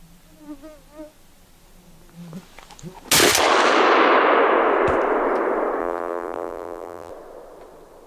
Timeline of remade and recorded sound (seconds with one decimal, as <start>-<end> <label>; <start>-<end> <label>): 0.0-5.8 recorded; 5.8-7.1 remade; 7.1-8.1 recorded